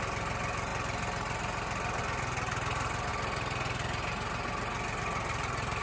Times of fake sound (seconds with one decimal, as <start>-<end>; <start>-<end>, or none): none